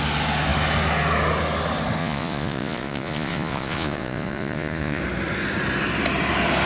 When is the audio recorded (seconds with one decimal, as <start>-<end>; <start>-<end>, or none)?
0.0-2.0; 5.0-6.7